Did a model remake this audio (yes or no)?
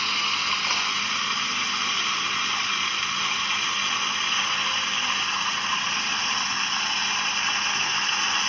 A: no